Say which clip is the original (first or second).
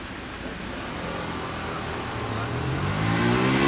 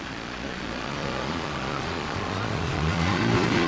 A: first